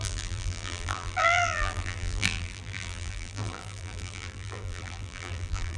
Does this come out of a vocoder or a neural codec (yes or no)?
yes